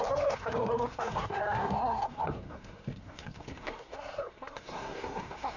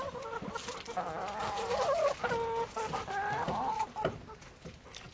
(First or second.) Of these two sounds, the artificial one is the first